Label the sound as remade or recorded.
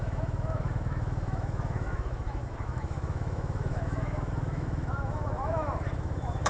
remade